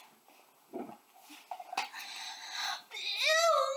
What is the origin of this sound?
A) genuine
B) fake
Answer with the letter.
A